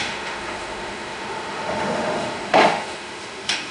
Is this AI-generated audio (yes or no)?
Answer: yes